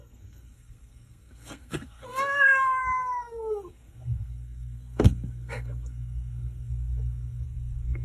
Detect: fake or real fake